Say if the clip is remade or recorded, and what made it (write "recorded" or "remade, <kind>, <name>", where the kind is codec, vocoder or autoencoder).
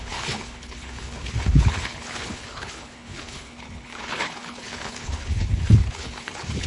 remade, codec, HILCodec